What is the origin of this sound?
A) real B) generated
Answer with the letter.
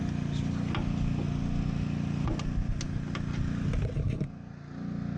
A